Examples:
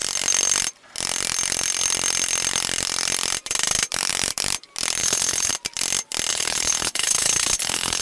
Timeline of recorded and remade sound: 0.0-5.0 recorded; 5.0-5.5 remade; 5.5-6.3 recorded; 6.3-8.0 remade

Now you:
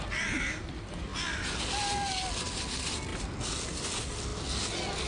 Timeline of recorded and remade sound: 0.0-5.1 recorded

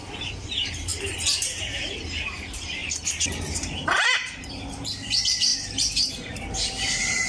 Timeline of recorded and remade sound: 0.0-0.9 remade; 0.9-1.6 recorded; 1.6-7.3 remade